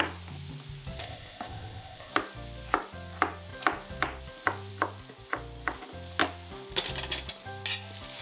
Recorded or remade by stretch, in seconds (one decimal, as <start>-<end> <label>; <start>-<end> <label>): 0.0-1.0 recorded; 1.0-2.1 remade; 2.1-8.2 recorded